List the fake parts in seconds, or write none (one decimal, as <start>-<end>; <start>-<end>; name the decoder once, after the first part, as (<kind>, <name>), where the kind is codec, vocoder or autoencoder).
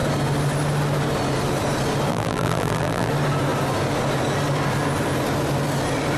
2.1-3.1 (vocoder, BigVGAN v2)